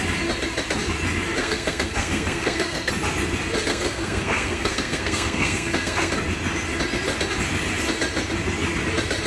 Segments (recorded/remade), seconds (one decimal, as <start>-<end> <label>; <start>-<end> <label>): 0.0-1.4 recorded; 1.4-2.9 remade; 2.9-3.7 recorded; 3.7-6.1 remade; 6.1-9.3 recorded